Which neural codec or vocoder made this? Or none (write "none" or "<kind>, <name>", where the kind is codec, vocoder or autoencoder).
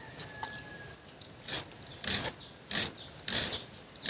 none